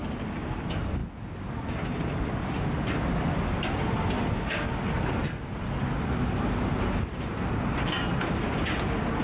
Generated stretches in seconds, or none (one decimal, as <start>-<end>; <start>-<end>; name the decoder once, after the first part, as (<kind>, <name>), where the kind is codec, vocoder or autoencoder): none